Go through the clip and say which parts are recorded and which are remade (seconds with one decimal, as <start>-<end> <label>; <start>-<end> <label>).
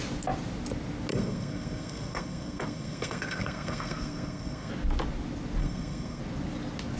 0.0-1.1 recorded; 1.1-4.7 remade; 4.7-5.6 recorded; 5.6-6.2 remade; 6.2-7.0 recorded